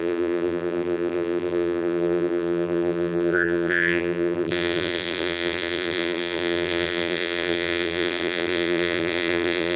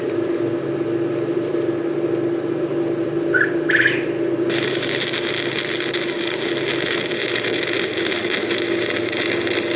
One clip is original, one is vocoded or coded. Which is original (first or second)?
second